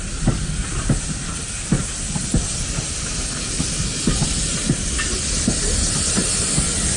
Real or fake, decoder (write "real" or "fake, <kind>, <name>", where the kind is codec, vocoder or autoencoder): real